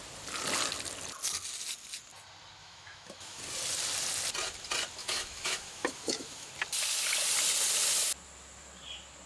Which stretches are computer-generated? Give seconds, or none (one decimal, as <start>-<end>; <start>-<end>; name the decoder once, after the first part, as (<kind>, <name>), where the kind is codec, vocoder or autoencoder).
2.6-3.4 (autoencoder, DAC-VAE); 5.0-6.5